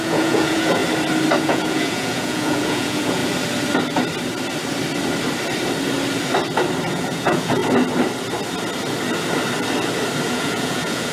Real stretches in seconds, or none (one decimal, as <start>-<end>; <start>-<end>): 0.8-1.4; 3.2-6.9; 7.6-10.3